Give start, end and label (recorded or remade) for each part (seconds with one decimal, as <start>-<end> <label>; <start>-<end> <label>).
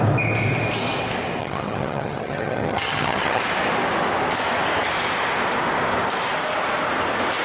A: 0.0-1.4 recorded; 1.4-3.4 remade; 3.4-7.4 recorded